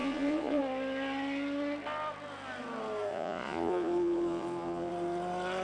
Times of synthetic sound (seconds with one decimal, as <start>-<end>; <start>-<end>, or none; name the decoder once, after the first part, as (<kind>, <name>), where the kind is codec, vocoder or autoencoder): 0.0-0.6 (vocoder, Vocos); 3.1-4.9

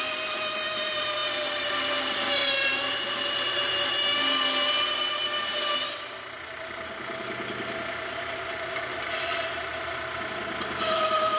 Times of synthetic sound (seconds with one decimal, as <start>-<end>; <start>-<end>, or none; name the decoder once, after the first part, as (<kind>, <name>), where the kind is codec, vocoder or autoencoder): none

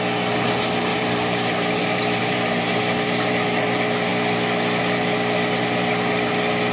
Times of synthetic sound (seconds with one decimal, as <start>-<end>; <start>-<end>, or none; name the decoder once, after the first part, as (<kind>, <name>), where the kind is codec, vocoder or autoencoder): 0.9-1.8 (vocoder, BigVGAN v2); 2.2-2.8

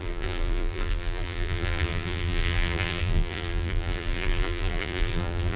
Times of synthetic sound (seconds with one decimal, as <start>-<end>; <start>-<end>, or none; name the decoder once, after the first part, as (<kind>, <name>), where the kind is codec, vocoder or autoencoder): 0.0-5.6 (vocoder, BigVGAN v2)

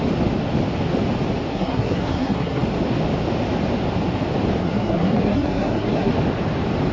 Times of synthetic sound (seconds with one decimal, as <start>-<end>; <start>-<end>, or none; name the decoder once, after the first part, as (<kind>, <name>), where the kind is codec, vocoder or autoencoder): 1.5-2.6 (codec, SNAC); 4.6-6.1